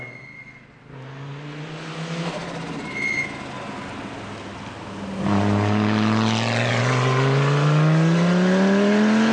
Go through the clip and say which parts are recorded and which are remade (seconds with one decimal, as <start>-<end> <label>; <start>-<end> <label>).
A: 0.0-9.3 recorded